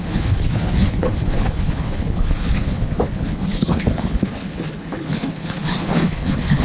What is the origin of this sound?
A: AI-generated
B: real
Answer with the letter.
A